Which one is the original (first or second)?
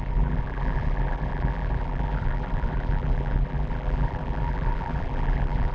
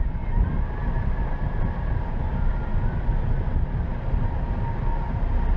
second